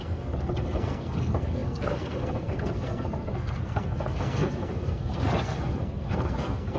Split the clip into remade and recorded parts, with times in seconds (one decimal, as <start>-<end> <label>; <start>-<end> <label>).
0.0-6.8 remade